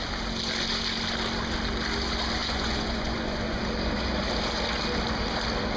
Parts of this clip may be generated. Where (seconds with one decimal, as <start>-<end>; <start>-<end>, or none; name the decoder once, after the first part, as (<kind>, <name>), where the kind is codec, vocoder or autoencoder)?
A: 2.4-3.6 (vocoder, Vocos)